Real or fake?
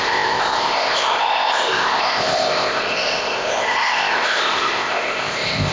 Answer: fake